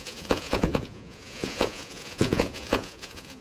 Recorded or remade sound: remade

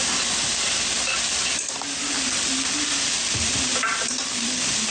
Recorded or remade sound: recorded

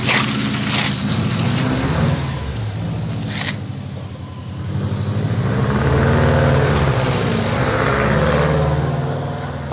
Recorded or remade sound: recorded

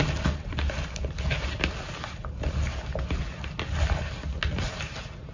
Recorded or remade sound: recorded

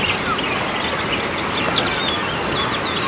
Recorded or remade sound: recorded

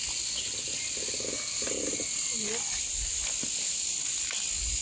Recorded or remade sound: recorded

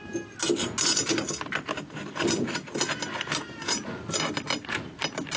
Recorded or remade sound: recorded